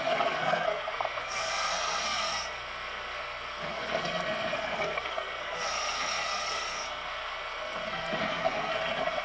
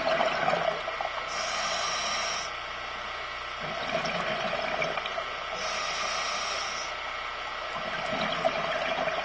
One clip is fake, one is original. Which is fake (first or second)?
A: first